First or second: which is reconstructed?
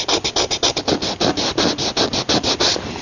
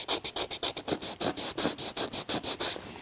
second